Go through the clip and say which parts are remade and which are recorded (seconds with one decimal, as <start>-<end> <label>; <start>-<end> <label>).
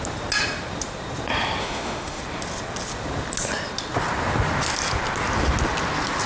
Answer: 0.0-1.6 recorded; 1.6-2.2 remade; 2.2-6.3 recorded